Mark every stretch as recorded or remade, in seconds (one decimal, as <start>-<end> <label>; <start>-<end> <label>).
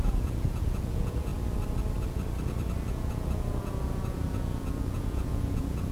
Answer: 0.0-1.3 remade; 1.3-2.9 recorded; 2.9-5.9 remade